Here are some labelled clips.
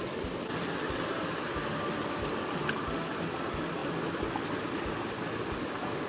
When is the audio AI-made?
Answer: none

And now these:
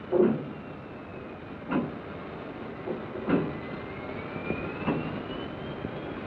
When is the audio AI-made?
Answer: none

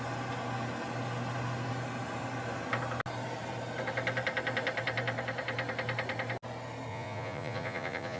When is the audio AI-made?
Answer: 6.9-8.2 (vocoder, Vocos)

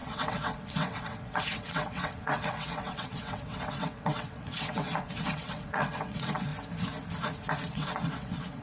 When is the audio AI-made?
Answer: 0.0-6.5 (vocoder, WaveNeXt); 7.7-8.6

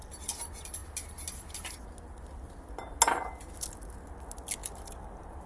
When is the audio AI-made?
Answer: none

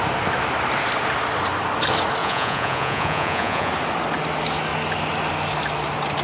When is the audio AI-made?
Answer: 2.2-3.7 (vocoder, Vocos)

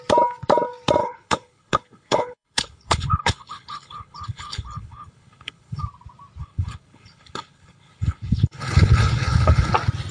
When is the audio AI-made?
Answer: 1.0-5.8 (codec, HILCodec); 6.4-9.7